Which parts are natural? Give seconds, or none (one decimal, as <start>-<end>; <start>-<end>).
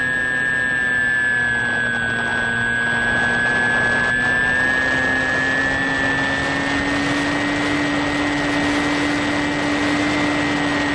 0.0-10.9